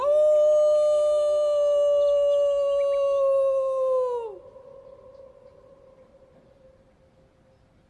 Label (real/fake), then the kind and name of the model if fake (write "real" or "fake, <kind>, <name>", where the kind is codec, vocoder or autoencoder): real